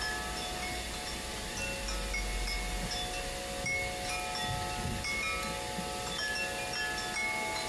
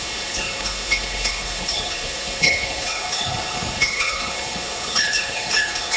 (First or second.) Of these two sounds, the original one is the first